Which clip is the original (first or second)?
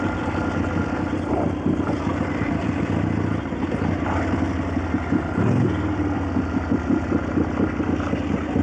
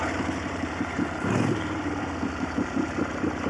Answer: first